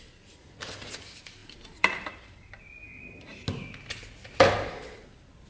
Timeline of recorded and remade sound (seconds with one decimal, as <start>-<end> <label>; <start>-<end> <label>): 0.0-1.4 recorded; 1.4-2.6 remade; 2.6-5.5 recorded